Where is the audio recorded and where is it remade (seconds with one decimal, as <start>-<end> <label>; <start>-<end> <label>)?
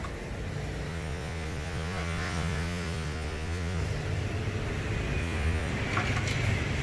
0.0-0.9 recorded; 0.9-3.8 remade; 3.8-5.2 recorded; 5.2-5.7 remade; 5.7-6.8 recorded